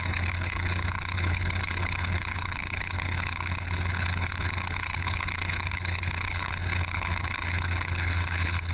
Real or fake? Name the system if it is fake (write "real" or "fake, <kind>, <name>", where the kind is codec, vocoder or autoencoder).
fake, codec, HILCodec